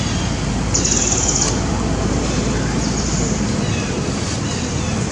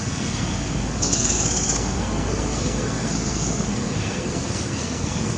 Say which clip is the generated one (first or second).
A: second